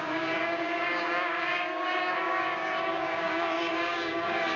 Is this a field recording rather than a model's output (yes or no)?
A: no